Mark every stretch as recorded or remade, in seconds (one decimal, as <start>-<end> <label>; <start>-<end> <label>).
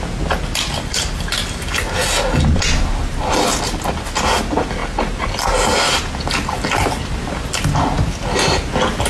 0.0-9.1 recorded